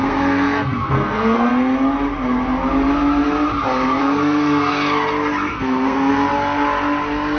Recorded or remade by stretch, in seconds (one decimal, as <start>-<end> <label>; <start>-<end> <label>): 0.0-1.5 remade; 1.5-4.0 recorded; 4.0-4.7 remade; 4.7-5.5 recorded; 5.5-6.1 remade; 6.1-7.4 recorded